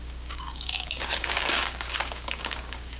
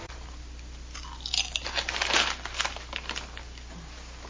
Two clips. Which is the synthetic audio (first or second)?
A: first